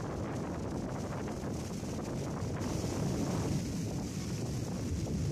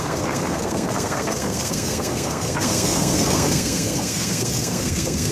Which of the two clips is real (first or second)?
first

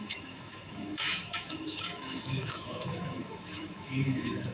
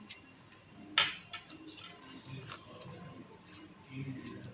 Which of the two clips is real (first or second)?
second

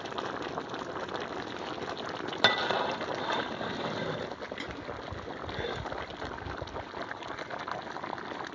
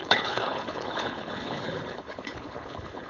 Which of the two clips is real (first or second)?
first